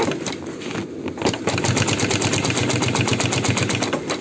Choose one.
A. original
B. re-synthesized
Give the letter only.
A